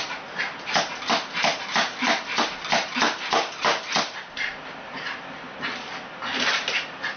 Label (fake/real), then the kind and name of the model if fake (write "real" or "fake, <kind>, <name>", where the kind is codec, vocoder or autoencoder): real